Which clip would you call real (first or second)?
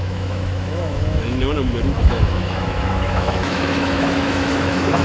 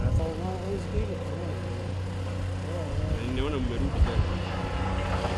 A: second